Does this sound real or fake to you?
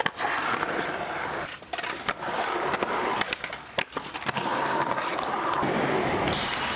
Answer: real